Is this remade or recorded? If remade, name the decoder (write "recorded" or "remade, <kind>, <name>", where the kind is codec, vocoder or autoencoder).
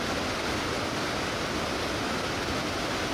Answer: recorded